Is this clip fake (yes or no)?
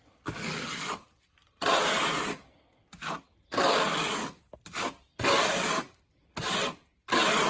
yes